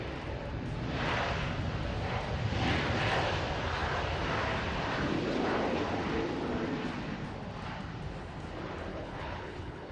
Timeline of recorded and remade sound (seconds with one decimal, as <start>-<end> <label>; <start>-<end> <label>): 0.0-8.9 recorded; 8.9-9.9 remade